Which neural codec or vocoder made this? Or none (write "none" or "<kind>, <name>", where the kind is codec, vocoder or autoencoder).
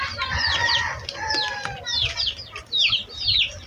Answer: none